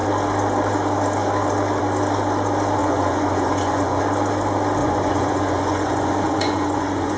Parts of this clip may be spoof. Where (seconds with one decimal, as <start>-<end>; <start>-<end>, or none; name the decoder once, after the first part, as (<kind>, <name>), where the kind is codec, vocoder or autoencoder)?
2.8-4.0 (vocoder, Vocos); 4.8-7.2